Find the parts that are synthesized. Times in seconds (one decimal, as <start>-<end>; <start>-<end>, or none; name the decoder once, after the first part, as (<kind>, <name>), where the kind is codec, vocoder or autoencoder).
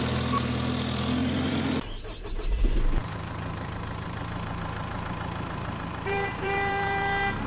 1.2-1.7 (vocoder, BigVGAN v2); 3.0-7.5